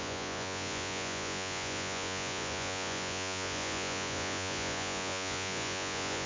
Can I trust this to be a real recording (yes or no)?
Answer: no